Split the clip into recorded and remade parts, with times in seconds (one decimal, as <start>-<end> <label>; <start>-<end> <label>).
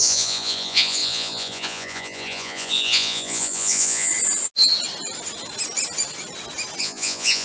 0.0-4.1 remade; 4.1-6.8 recorded; 6.8-7.4 remade